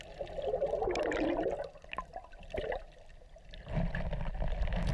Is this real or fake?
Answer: real